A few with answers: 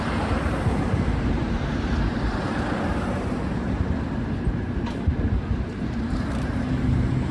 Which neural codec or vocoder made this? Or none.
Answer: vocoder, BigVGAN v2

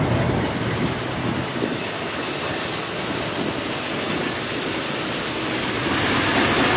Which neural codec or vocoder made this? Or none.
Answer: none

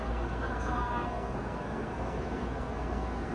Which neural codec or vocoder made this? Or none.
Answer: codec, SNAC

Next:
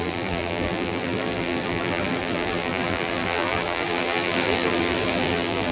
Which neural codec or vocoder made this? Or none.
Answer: vocoder, BigVGAN v2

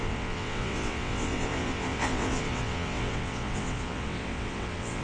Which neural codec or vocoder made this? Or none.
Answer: vocoder, WaveNeXt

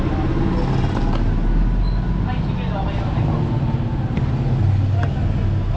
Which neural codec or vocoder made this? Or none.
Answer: none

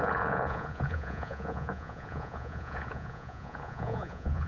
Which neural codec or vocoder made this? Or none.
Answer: vocoder, Vocos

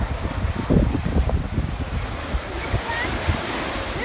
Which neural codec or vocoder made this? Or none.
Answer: none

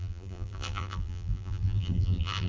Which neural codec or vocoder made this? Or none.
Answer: vocoder, BigVGAN v2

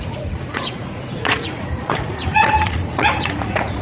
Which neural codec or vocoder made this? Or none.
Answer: vocoder, Vocos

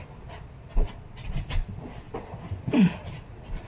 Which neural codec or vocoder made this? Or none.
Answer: none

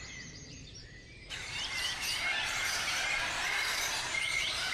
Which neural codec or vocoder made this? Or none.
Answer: vocoder, BigVGAN v2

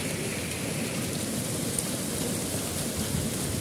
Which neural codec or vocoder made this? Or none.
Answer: vocoder, BigVGAN v2